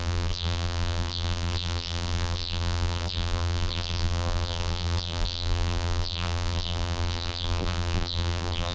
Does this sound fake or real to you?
fake